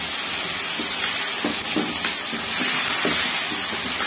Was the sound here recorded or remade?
recorded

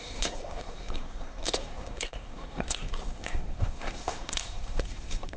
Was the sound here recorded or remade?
remade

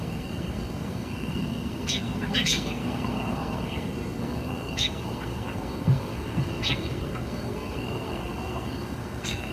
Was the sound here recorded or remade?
remade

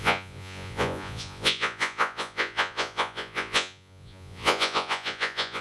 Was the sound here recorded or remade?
remade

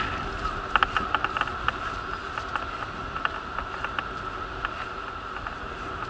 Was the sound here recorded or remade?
recorded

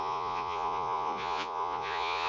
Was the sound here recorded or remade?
remade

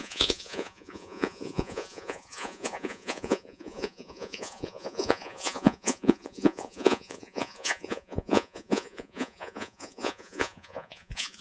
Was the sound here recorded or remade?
remade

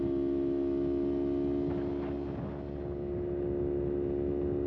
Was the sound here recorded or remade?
recorded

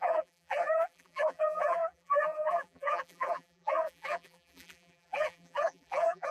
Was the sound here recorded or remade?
remade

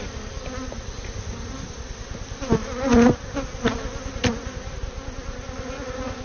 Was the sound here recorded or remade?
recorded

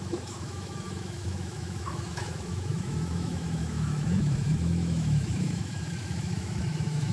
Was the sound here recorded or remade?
remade